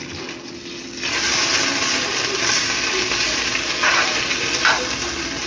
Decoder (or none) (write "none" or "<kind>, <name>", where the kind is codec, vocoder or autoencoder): none